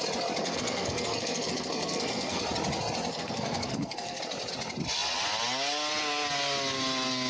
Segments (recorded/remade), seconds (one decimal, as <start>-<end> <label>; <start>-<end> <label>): 0.0-0.4 recorded; 0.4-2.4 remade; 2.4-3.1 recorded; 3.1-4.2 remade; 4.2-7.3 recorded